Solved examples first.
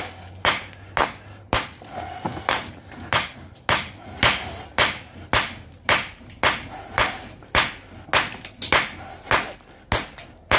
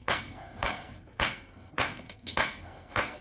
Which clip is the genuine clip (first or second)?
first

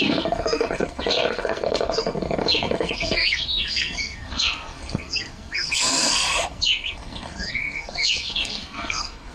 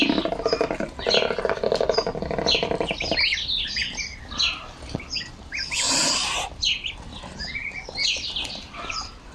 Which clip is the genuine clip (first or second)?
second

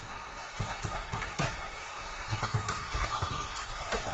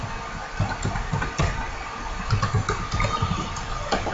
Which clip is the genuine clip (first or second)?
second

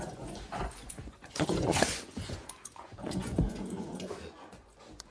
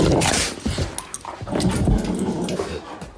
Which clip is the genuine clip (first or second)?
second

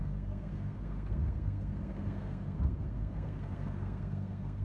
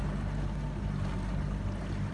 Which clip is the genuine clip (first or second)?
second